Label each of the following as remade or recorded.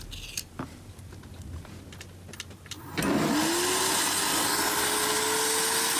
recorded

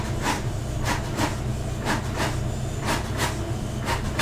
remade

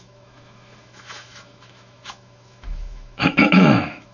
remade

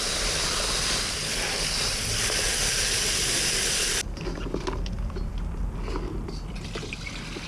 recorded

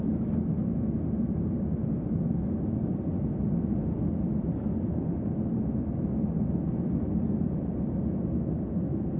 recorded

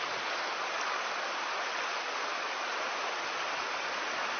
recorded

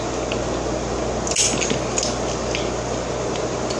recorded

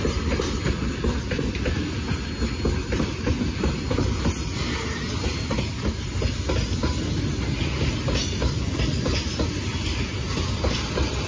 recorded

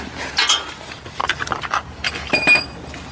recorded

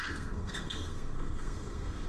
remade